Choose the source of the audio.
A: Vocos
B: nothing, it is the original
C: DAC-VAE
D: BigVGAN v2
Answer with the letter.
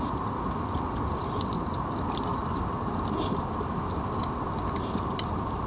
B